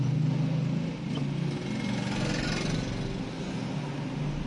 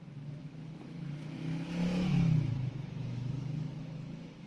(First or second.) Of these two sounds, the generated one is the second